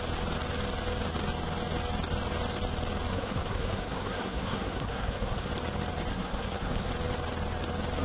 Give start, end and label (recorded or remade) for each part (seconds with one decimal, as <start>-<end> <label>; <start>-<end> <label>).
0.0-3.1 recorded; 3.1-5.5 remade; 5.5-6.1 recorded; 6.1-6.9 remade; 6.9-8.0 recorded